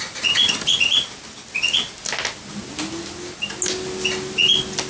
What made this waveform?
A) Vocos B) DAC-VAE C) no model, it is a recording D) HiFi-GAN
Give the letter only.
C